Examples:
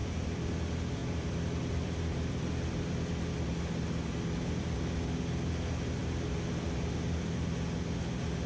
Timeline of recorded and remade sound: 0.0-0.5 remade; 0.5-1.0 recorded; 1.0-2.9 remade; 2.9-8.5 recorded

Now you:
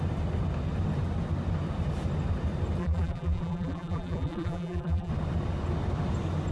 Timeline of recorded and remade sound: 0.0-2.8 recorded; 2.8-5.1 remade; 5.1-6.5 recorded

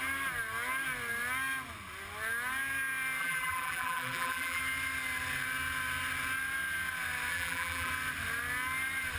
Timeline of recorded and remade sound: 0.0-3.2 recorded; 3.2-4.6 remade; 4.6-7.3 recorded; 7.3-7.9 remade; 7.9-9.2 recorded

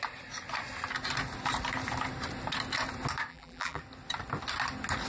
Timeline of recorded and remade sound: 0.0-3.3 recorded; 3.3-3.8 remade; 3.8-5.1 recorded